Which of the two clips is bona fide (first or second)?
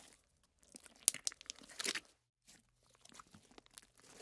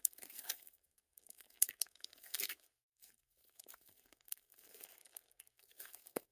first